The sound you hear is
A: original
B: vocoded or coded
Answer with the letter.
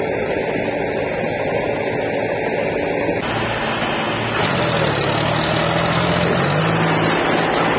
A